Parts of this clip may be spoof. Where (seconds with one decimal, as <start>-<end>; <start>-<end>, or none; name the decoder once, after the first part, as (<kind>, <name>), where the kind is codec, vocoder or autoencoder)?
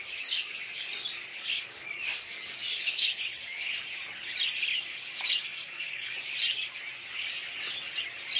0.0-0.9 (codec, DAC); 1.3-3.7; 4.7-6.2